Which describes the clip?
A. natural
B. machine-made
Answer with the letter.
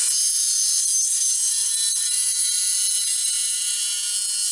A